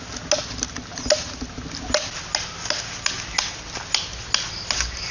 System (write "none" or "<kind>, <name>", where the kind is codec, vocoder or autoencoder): none